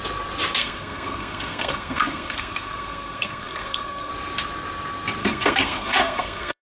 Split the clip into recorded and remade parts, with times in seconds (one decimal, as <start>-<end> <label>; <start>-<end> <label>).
0.0-0.6 recorded; 0.6-4.1 remade; 4.1-5.2 recorded; 5.2-6.6 remade